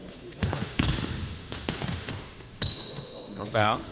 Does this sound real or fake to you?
fake